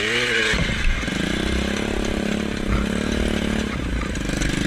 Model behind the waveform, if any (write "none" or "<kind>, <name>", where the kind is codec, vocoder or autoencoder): none